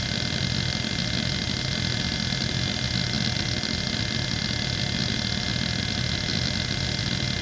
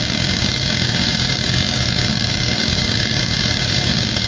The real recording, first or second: first